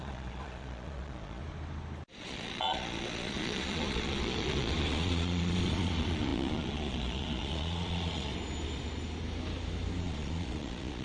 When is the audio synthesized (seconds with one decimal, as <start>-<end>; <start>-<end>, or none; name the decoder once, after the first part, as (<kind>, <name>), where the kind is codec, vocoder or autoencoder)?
0.0-1.4 (vocoder, Vocos); 2.2-8.3; 10.0-11.0